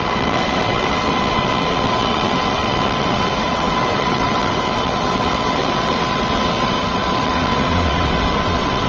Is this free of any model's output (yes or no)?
no